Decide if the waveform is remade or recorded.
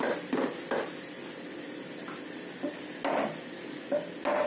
recorded